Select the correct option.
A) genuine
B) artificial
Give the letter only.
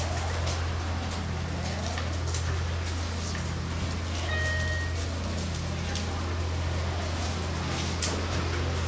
A